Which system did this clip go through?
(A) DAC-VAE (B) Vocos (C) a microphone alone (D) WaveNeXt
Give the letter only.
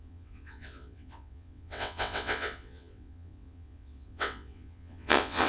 D